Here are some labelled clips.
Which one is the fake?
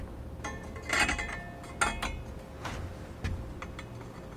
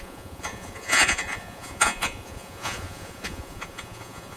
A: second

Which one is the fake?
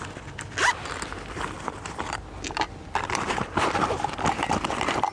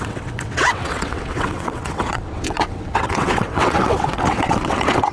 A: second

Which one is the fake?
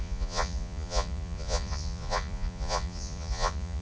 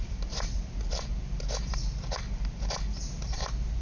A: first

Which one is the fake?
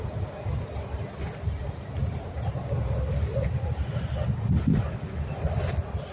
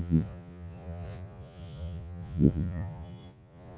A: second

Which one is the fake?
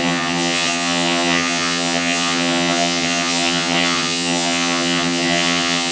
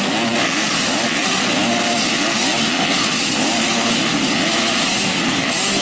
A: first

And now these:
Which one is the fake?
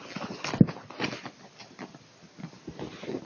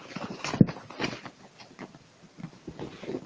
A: second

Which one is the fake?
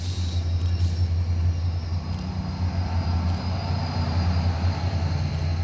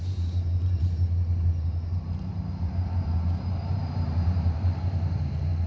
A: second